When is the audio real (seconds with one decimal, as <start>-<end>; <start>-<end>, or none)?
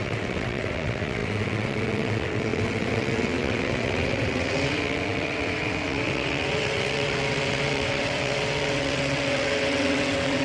none